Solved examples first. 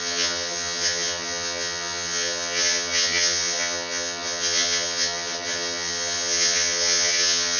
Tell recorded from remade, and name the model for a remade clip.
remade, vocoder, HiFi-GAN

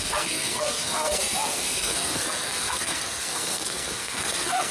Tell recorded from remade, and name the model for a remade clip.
remade, codec, SNAC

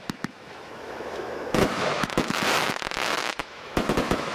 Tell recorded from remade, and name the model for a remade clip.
remade, autoencoder, DAC-VAE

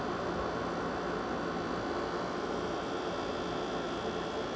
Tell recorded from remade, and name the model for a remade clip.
recorded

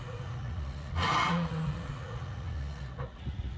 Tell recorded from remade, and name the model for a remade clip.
remade, vocoder, Vocos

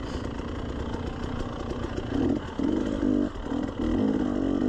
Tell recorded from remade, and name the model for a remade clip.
recorded